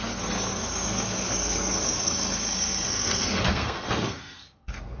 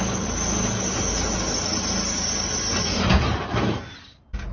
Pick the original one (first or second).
second